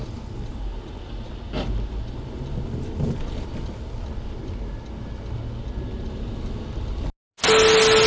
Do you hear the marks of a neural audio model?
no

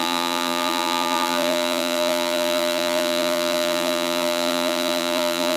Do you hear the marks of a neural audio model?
yes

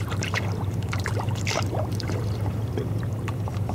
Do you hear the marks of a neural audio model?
yes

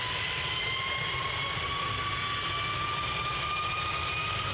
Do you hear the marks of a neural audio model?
no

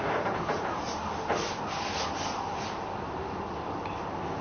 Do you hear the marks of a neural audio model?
no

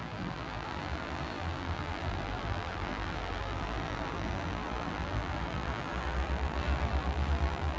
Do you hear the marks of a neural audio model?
yes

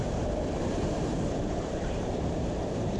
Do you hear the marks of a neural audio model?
yes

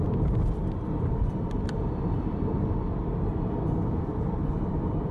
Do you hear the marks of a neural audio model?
no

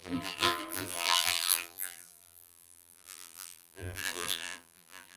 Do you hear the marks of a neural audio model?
yes